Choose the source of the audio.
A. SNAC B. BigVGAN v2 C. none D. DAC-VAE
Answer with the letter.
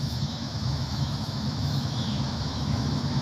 D